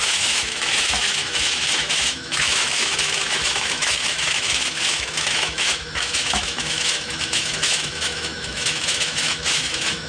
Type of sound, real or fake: fake